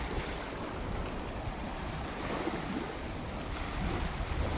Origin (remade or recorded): recorded